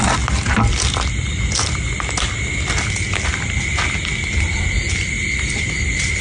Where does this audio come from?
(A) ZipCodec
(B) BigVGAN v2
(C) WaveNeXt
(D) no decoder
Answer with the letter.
D